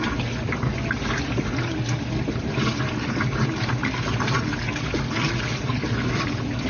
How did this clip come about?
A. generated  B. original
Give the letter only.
B